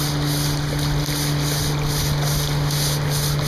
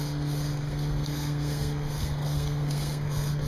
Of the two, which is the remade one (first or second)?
second